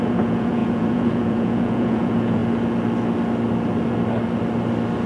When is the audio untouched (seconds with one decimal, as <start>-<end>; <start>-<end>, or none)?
2.4-5.1